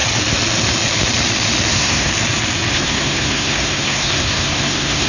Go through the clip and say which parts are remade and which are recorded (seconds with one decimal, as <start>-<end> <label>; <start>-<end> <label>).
0.0-1.7 recorded; 1.7-2.1 remade; 2.1-2.7 recorded; 2.7-5.1 remade